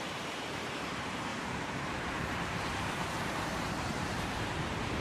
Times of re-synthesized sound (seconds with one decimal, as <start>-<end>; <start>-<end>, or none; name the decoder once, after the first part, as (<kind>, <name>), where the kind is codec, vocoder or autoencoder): 0.0-5.0 (vocoder, BigVGAN v2)